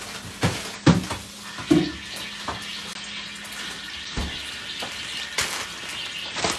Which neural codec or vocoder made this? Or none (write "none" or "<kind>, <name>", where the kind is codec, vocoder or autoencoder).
none